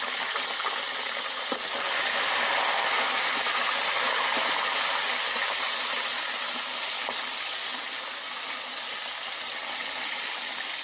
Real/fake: real